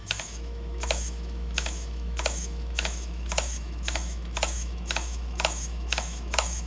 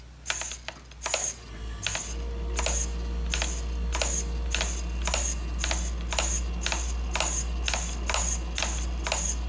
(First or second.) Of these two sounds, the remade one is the first